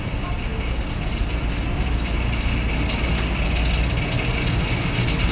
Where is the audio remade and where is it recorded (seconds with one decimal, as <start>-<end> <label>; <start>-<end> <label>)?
0.0-5.3 recorded